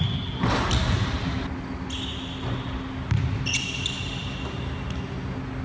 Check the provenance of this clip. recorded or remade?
recorded